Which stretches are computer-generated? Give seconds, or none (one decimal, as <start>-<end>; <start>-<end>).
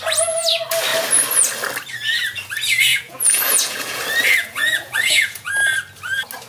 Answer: 2.9-4.0; 4.4-5.5